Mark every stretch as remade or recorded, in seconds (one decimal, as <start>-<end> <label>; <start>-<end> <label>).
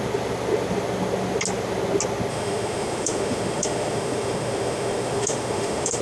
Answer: 0.0-2.3 recorded; 2.3-6.0 remade